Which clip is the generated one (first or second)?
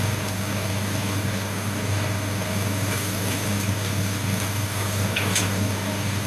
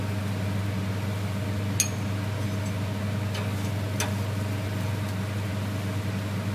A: first